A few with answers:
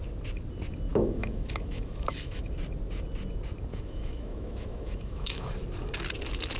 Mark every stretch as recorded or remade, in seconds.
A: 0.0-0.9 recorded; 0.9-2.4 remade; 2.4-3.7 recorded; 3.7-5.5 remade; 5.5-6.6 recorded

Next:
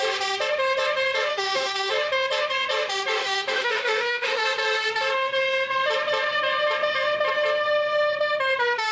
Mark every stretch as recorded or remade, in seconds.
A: 0.0-1.3 recorded; 1.3-1.9 remade; 1.9-3.2 recorded; 3.2-4.4 remade; 4.4-8.9 recorded

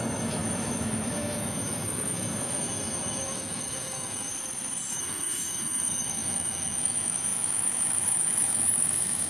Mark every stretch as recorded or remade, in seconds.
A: 0.0-4.3 remade; 4.3-4.9 recorded; 4.9-9.3 remade

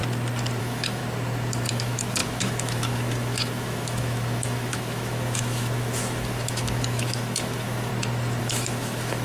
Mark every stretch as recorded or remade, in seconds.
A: 0.0-0.6 recorded; 0.6-1.0 remade; 1.0-1.7 recorded; 1.7-7.9 remade; 7.9-8.4 recorded; 8.4-9.2 remade

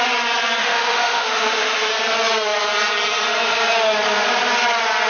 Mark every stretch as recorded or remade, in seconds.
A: 0.0-0.6 recorded; 0.6-1.9 remade; 1.9-5.1 recorded

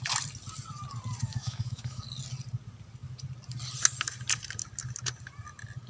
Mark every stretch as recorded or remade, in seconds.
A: 0.0-1.3 recorded; 1.3-2.0 remade; 2.0-5.9 recorded

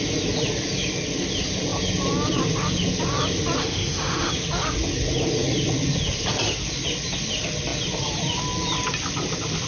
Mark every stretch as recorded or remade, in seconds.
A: 0.0-3.6 recorded; 3.6-4.3 remade; 4.3-9.7 recorded

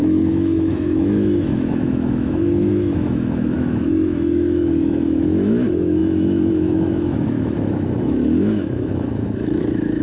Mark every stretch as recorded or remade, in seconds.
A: 0.0-10.0 remade